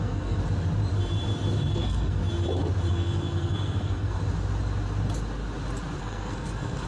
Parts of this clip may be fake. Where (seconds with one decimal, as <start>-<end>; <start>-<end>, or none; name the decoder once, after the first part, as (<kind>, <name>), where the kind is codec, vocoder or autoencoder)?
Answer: 0.0-0.4 (codec, SNAC); 1.7-2.2; 2.9-4.2; 6.0-6.9